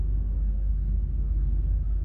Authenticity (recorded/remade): remade